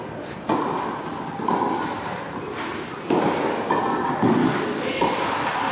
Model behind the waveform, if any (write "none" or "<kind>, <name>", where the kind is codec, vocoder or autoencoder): none